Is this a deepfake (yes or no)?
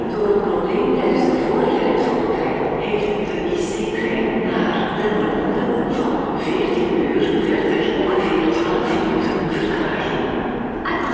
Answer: no